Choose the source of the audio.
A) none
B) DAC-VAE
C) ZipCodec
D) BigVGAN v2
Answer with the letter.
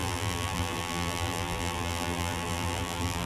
D